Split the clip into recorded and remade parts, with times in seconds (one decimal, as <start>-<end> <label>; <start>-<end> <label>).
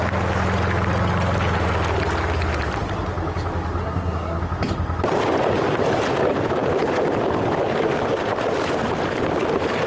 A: 0.0-3.8 recorded; 3.8-4.4 remade; 4.4-9.9 recorded